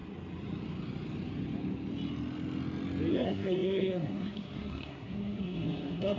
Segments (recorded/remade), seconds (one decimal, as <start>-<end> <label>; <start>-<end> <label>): 0.0-3.1 recorded; 3.1-6.2 remade

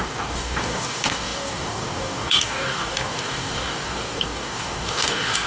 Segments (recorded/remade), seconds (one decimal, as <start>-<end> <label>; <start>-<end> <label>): 0.0-5.5 remade

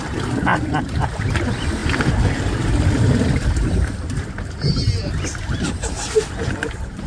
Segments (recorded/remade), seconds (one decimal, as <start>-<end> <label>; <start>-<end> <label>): 0.0-0.5 recorded; 0.5-1.2 remade; 1.2-1.8 recorded; 1.8-5.1 remade; 5.1-7.1 recorded

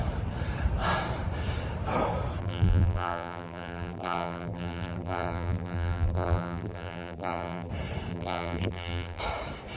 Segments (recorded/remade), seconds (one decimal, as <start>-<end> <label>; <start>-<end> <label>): 0.0-2.4 recorded; 2.4-7.7 remade; 7.7-8.1 recorded; 8.1-9.2 remade; 9.2-9.8 recorded

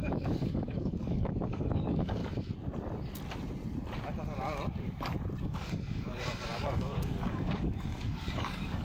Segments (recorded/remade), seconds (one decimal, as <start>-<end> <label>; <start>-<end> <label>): 0.0-2.2 remade; 2.2-5.4 recorded; 5.4-8.8 remade

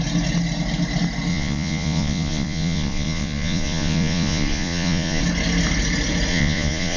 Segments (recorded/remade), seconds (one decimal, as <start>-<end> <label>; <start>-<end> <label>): 0.0-1.3 recorded; 1.3-5.2 remade; 5.2-6.3 recorded; 6.3-7.0 remade